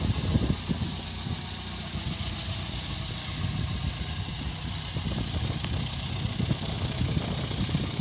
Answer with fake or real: real